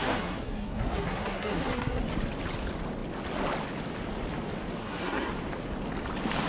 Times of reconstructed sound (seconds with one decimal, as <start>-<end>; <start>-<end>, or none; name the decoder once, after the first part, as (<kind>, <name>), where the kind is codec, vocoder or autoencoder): 0.0-2.0 (codec, SNAC); 4.8-5.3